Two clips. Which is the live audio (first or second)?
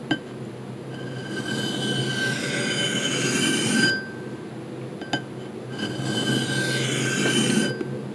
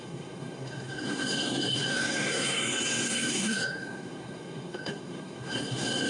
first